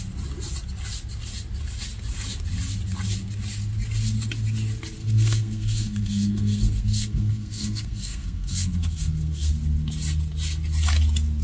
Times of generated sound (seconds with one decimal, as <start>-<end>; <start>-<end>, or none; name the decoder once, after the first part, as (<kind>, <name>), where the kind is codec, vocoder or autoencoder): 5.0-9.5 (codec, SNAC)